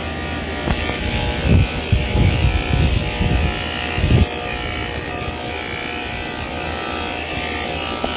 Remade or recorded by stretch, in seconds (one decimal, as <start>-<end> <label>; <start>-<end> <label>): 0.0-8.2 recorded